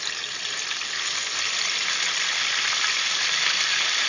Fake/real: real